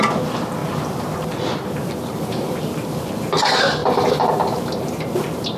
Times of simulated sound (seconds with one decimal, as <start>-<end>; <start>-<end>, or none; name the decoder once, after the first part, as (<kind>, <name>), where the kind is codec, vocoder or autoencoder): 3.8-4.3 (vocoder, BigVGAN v2)